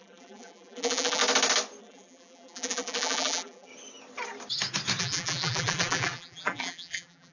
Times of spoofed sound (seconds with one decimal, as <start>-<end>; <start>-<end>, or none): 0.0-1.2; 1.8-3.7; 5.0-7.3